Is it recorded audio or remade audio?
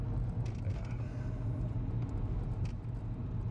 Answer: recorded